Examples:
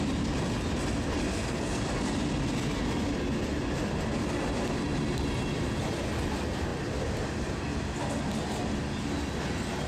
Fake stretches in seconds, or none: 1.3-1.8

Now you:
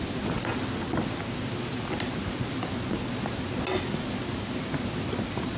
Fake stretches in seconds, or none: none

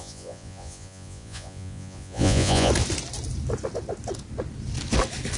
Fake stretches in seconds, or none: 0.0-2.7

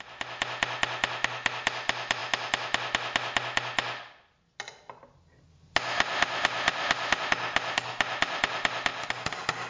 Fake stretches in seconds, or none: none

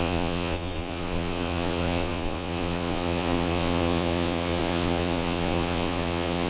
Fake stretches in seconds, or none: 0.0-6.5

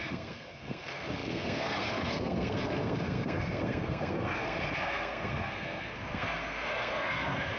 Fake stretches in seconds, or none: 0.0-7.6